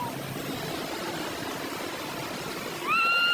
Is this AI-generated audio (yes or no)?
no